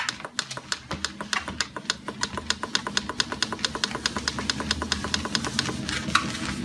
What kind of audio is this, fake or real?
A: real